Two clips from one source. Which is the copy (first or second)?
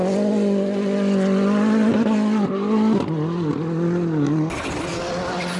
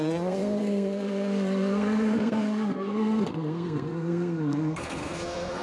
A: second